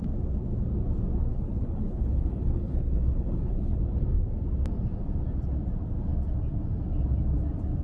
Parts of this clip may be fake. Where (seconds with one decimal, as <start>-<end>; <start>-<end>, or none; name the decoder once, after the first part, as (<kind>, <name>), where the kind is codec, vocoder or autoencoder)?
1.3-3.8 (codec, HILCodec)